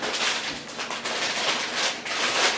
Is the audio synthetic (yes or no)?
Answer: no